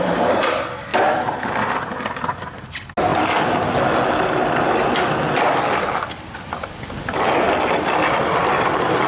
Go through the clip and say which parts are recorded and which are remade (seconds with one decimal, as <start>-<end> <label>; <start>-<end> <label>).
0.0-9.1 recorded